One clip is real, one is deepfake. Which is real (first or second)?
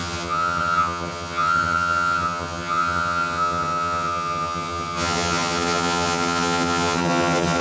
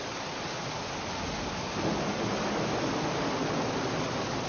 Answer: second